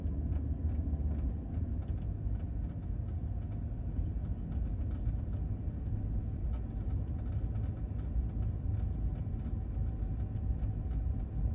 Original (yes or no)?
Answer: yes